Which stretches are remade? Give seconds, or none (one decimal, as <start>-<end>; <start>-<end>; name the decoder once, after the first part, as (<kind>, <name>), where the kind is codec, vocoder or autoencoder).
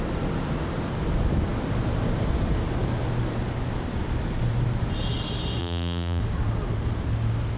5.6-6.2 (vocoder, BigVGAN v2)